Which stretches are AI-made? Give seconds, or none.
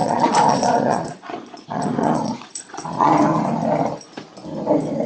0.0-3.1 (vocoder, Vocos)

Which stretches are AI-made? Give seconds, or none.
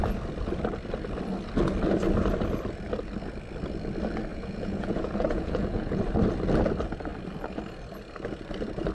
4.3-6.0 (vocoder, Vocos)